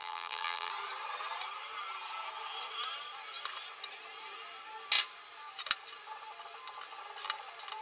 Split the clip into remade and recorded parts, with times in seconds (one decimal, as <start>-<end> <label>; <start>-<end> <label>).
0.0-0.7 remade; 0.7-7.8 recorded